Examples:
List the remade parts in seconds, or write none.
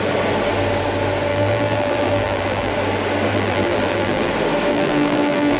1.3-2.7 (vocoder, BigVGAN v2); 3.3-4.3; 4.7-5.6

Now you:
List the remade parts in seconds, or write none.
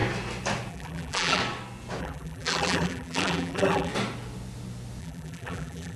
0.7-1.4 (vocoder, BigVGAN v2); 2.0-3.9; 5.0-6.0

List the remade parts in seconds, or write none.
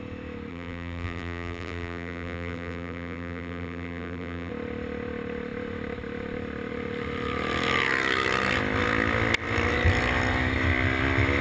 0.5-4.5 (vocoder, BigVGAN v2)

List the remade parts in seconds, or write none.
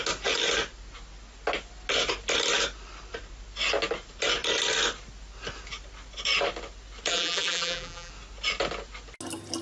7.1-8.1 (vocoder, BigVGAN v2)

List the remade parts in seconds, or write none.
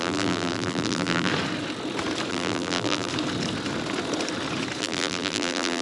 0.0-1.3 (vocoder, BigVGAN v2); 2.3-3.1; 4.8-5.8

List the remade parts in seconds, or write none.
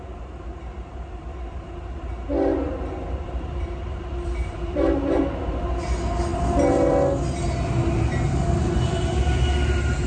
0.5-1.8 (vocoder, BigVGAN v2); 2.5-5.2